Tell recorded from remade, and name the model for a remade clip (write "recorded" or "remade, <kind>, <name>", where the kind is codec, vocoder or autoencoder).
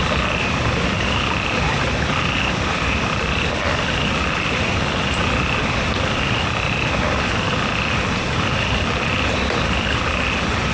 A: recorded